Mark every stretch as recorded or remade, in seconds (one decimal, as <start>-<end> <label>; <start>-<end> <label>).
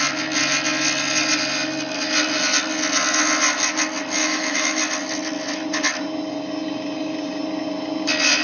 0.0-4.2 recorded; 4.2-4.8 remade; 4.8-8.4 recorded